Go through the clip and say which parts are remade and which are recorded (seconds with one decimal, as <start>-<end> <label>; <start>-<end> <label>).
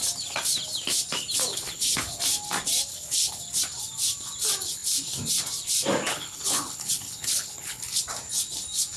0.0-1.5 recorded; 1.5-2.2 remade; 2.2-2.9 recorded; 2.9-3.4 remade; 3.4-6.1 recorded; 6.1-8.0 remade; 8.0-9.0 recorded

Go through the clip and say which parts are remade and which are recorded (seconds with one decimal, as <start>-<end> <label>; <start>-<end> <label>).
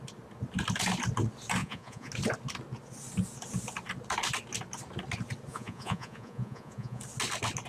0.0-1.6 recorded; 1.6-2.1 remade; 2.1-5.5 recorded; 5.5-7.0 remade; 7.0-7.7 recorded